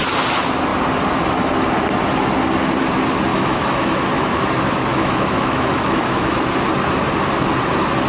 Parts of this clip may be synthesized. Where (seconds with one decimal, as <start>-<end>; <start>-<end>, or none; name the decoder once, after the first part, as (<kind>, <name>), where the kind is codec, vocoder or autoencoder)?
3.3-4.4 (autoencoder, DAC-VAE); 4.9-6.4